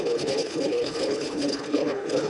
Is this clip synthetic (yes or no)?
yes